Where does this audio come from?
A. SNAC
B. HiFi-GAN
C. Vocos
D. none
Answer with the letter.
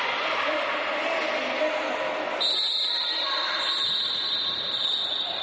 D